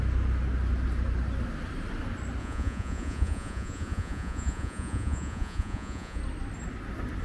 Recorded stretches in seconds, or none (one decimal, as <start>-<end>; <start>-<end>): 0.0-2.4; 6.2-7.2